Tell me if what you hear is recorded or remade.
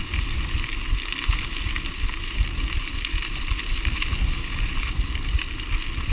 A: recorded